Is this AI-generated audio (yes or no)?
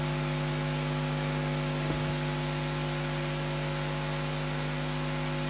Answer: no